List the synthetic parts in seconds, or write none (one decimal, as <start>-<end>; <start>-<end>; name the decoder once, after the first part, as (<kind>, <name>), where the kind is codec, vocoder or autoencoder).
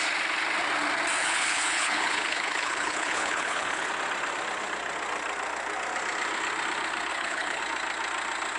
1.2-3.9 (codec, HILCodec); 7.1-7.6